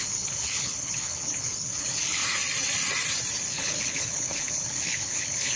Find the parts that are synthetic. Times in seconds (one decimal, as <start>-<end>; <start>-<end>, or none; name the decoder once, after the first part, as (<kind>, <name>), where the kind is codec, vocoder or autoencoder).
0.0-2.2 (codec, HILCodec); 3.5-5.6